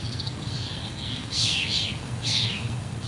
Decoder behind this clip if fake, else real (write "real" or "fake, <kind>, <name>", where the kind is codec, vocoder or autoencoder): fake, codec, SNAC